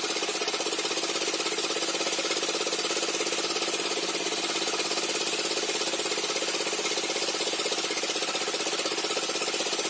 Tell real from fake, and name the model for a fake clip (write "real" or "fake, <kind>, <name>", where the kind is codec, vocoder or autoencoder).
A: real